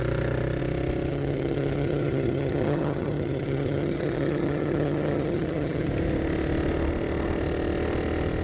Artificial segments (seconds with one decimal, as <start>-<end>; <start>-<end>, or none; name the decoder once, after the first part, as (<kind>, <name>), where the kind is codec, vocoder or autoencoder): 1.1-5.9 (vocoder, HiFi-GAN)

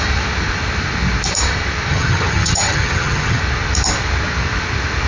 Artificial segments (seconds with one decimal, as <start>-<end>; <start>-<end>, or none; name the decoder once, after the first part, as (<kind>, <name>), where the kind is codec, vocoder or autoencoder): 1.9-3.4 (vocoder, HiFi-GAN)

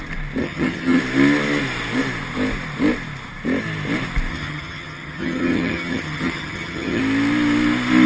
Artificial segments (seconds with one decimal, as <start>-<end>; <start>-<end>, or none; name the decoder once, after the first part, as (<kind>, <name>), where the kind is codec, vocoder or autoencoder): 0.4-1.0 (vocoder, HiFi-GAN); 4.3-7.0

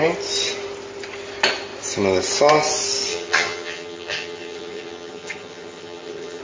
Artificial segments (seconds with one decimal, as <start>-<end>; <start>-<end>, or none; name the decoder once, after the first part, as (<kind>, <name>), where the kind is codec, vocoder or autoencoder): 3.1-6.4 (vocoder, HiFi-GAN)

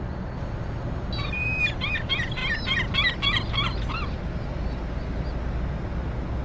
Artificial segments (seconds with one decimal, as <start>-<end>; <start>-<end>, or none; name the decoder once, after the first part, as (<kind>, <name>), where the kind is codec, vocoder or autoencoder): none

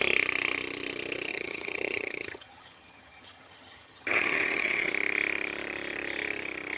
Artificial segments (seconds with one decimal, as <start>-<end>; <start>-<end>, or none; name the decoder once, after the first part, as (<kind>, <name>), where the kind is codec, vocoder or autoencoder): 1.3-4.9 (vocoder, HiFi-GAN)

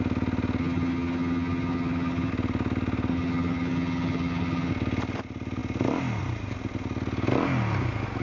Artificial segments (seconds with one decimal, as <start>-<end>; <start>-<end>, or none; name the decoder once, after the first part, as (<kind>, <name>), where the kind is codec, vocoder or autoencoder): 0.6-2.3 (vocoder, HiFi-GAN); 3.1-4.7